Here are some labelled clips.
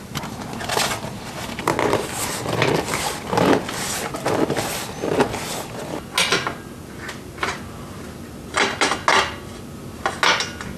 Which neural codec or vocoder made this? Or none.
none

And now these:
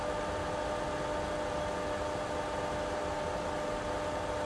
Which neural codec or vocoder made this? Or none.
none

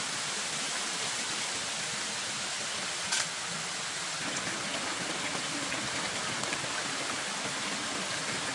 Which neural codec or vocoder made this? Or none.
none